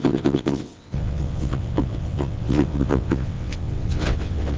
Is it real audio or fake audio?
fake